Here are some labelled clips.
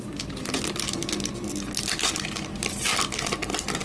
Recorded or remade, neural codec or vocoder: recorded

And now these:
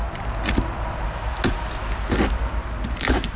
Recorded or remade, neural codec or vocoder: recorded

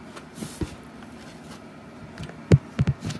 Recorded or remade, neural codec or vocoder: recorded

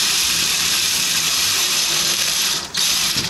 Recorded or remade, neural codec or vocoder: remade, vocoder, BigVGAN v2